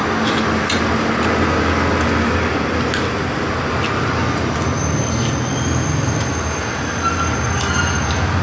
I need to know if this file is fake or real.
real